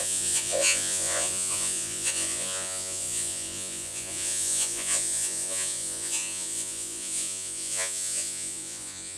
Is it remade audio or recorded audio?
remade